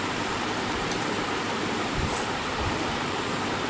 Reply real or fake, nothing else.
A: fake